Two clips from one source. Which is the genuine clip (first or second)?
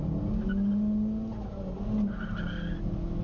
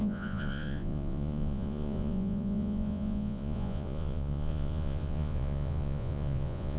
first